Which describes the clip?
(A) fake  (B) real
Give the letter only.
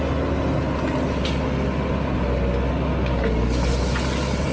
B